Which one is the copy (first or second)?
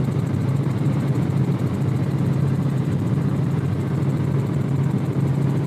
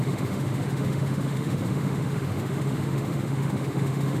second